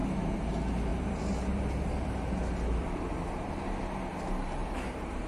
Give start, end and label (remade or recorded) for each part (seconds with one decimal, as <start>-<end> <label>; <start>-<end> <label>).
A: 0.0-0.5 remade; 0.5-0.9 recorded; 0.9-2.8 remade; 2.8-4.6 recorded; 4.6-5.3 remade